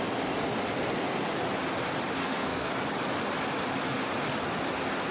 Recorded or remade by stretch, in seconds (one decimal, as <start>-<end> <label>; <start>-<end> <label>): 0.0-2.2 recorded; 2.2-2.7 remade; 2.7-5.1 recorded